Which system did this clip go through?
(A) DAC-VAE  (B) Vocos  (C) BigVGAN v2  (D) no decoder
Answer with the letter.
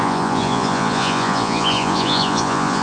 B